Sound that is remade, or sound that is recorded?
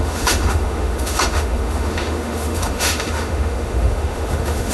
remade